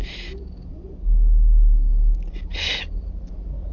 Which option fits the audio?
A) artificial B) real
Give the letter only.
B